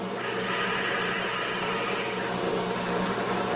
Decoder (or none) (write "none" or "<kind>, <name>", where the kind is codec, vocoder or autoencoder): none